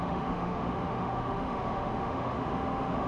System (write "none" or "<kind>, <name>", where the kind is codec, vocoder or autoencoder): autoencoder, DAC-VAE